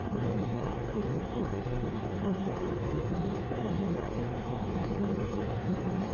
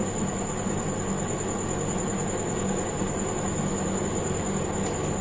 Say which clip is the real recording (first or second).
second